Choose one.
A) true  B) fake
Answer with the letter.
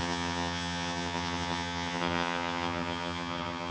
B